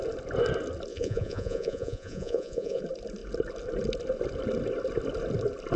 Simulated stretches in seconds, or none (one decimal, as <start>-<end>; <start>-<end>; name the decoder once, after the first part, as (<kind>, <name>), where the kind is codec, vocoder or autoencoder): 0.9-2.8 (vocoder, Vocos)